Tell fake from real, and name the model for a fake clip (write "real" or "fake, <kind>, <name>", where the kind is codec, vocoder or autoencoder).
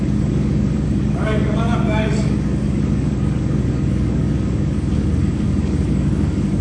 fake, codec, DAC